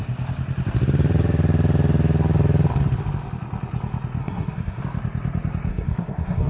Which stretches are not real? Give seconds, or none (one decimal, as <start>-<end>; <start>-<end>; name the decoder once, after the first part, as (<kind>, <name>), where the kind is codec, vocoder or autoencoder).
4.2-4.8 (codec, SNAC); 5.7-6.5